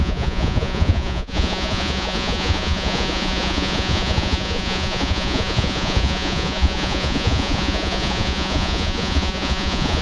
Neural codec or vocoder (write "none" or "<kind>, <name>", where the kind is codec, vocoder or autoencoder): vocoder, Vocos